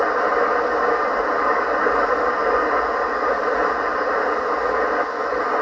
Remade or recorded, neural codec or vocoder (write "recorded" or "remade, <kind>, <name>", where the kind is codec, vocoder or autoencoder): recorded